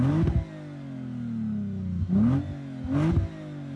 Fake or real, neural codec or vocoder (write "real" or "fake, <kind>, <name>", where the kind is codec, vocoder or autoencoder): real